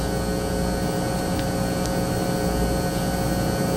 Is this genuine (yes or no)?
yes